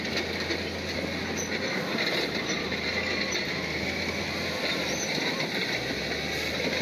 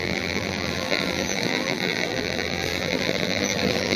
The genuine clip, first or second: first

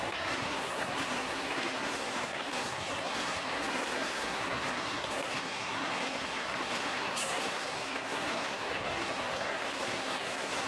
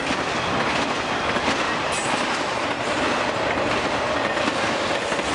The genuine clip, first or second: second